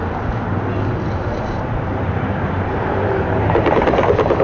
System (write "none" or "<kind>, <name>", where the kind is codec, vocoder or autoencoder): none